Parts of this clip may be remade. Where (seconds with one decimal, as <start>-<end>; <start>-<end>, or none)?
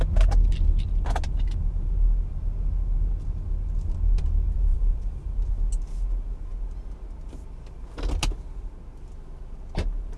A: 4.7-5.5